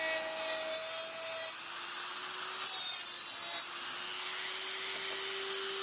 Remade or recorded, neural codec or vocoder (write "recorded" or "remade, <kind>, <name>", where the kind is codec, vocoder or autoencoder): recorded